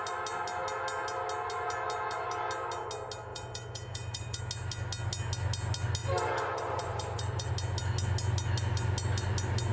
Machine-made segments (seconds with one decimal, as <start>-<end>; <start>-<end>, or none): 3.3-4.4; 6.0-7.5